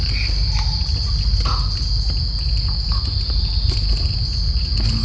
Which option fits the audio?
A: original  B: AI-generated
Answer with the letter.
A